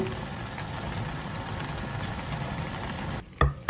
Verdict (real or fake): real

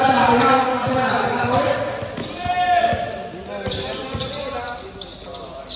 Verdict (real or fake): real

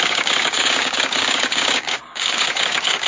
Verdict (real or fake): fake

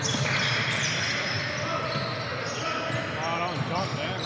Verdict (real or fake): real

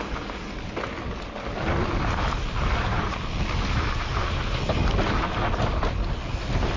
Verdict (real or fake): real